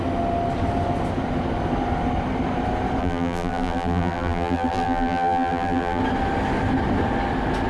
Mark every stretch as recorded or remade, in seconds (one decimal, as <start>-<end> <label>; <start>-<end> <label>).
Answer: 0.0-3.0 recorded; 3.0-6.0 remade; 6.0-7.7 recorded